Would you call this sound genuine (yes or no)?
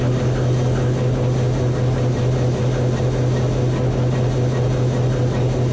yes